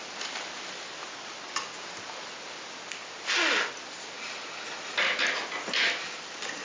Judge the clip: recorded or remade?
recorded